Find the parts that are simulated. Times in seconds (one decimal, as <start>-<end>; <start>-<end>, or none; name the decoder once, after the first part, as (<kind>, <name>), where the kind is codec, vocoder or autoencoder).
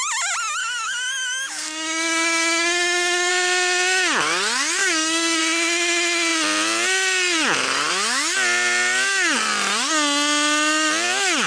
0.6-3.3 (codec, DAC); 4.8-5.4